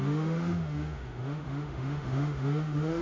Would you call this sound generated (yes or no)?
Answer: yes